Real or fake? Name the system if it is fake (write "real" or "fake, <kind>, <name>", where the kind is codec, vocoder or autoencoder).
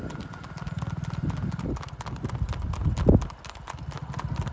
real